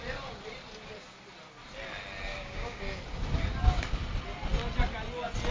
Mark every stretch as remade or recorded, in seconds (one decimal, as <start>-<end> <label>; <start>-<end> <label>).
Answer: 0.0-2.3 recorded; 2.3-2.8 remade; 2.8-5.5 recorded